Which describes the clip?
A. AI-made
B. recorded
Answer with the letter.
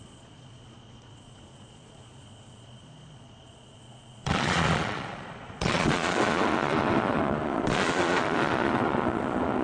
A